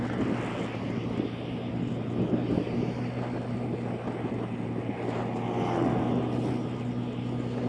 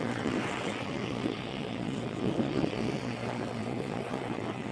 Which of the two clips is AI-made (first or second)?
second